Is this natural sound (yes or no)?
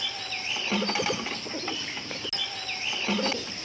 yes